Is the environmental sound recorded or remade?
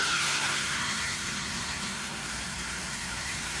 remade